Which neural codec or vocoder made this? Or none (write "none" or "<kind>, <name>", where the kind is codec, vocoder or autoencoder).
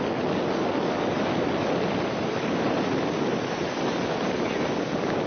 none